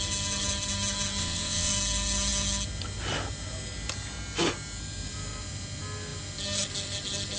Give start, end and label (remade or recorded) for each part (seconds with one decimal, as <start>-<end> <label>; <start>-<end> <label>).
0.0-1.2 recorded; 1.2-1.7 remade; 1.7-7.4 recorded